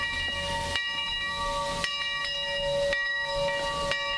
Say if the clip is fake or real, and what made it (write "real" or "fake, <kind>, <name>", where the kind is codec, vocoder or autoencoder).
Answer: real